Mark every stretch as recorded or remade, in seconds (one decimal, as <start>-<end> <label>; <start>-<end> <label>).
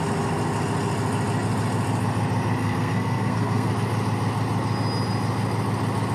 0.0-2.6 recorded; 2.6-3.7 remade; 3.7-6.1 recorded